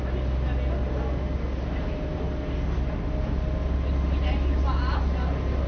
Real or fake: real